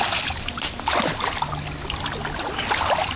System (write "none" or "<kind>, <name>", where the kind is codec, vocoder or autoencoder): none